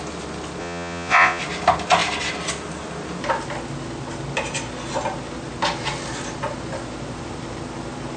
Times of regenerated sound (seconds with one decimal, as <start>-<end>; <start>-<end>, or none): 0.6-1.4